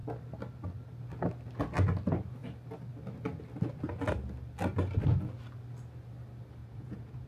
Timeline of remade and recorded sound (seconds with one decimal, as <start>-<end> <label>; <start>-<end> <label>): 0.0-6.6 recorded; 6.6-7.3 remade